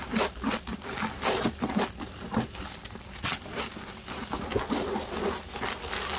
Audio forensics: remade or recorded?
recorded